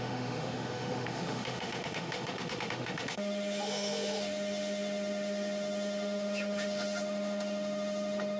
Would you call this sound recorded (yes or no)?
no